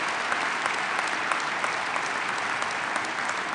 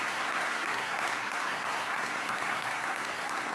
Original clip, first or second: first